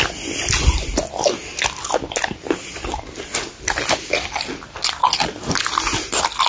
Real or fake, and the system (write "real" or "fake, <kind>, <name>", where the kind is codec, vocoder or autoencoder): real